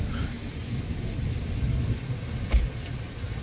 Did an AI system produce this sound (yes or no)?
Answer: no